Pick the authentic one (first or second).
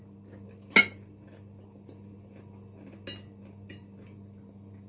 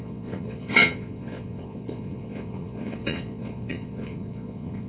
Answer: first